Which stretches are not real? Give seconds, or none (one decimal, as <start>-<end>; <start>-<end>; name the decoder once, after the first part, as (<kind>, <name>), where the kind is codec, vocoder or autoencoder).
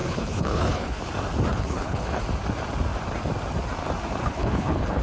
0.0-1.0 (codec, HILCodec); 1.5-2.2; 4.2-5.0